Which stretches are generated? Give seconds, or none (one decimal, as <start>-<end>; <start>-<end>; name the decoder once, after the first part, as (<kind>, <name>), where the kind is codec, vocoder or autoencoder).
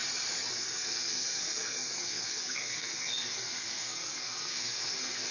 0.5-5.3 (codec, SNAC)